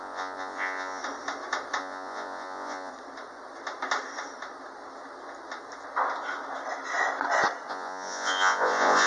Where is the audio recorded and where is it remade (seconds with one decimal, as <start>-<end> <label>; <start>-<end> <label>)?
0.0-1.0 remade; 1.0-1.8 recorded; 1.8-2.9 remade; 2.9-7.7 recorded; 7.7-9.1 remade